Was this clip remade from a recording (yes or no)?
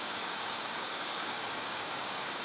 yes